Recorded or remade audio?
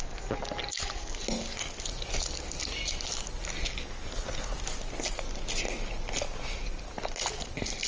recorded